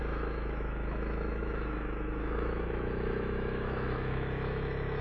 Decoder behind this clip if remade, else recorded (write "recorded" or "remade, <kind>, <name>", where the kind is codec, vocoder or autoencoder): remade, autoencoder, DAC-VAE